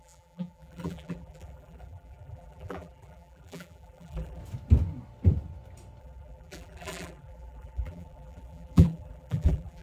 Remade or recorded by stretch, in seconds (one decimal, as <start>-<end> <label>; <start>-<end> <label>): 0.0-4.4 remade; 4.4-6.0 recorded; 6.0-9.8 remade